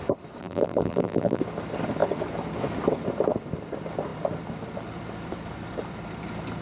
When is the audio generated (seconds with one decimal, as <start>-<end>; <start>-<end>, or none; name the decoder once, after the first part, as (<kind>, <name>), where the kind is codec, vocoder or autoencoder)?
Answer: 0.4-1.4 (vocoder, BigVGAN v2)